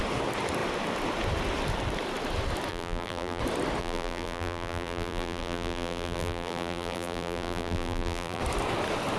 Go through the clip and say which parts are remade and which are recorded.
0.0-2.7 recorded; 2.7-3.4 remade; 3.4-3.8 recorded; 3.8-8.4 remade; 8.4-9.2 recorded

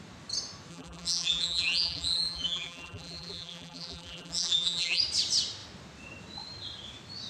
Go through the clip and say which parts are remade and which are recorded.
0.0-0.7 recorded; 0.7-5.0 remade; 5.0-7.3 recorded

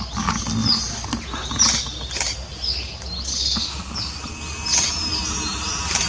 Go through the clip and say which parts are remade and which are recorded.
0.0-6.1 recorded